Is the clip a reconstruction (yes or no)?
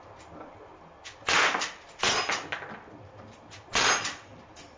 no